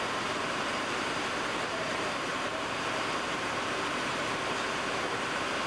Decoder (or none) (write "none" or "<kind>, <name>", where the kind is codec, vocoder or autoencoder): vocoder, BigVGAN v2